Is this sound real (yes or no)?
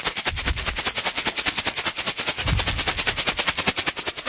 yes